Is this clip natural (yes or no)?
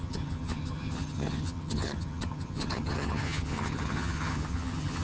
no